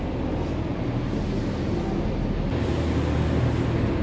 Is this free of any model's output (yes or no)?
yes